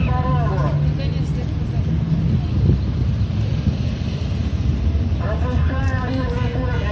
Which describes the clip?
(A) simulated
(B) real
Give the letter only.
B